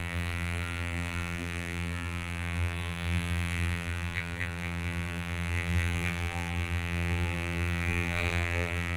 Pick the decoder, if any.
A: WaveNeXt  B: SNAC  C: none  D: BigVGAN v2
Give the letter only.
D